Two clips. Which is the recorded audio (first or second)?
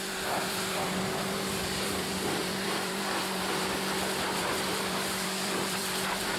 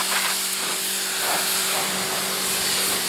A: second